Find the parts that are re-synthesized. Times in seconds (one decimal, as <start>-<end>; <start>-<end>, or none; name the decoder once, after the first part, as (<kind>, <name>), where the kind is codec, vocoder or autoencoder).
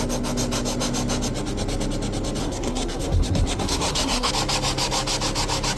2.4-4.3 (codec, SNAC)